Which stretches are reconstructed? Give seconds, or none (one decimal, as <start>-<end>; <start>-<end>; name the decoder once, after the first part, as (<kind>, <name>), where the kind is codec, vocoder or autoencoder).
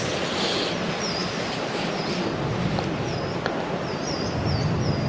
1.2-2.7 (vocoder, BigVGAN v2)